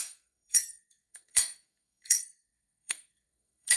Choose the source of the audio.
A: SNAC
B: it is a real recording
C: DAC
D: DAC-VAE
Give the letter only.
A